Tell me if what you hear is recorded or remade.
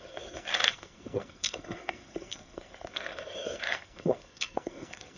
remade